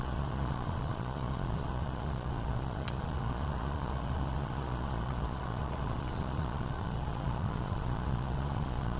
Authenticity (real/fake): fake